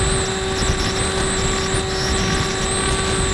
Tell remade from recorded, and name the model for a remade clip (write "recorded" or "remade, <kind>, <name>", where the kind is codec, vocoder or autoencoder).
recorded